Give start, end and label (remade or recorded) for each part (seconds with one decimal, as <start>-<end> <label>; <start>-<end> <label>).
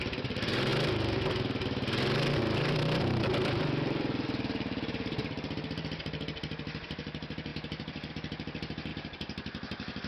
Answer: 0.0-0.7 remade; 0.7-2.4 recorded; 2.4-10.1 remade